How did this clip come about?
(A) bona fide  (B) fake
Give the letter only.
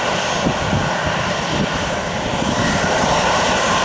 B